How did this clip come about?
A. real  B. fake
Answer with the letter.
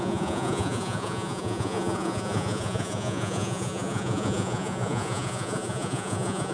B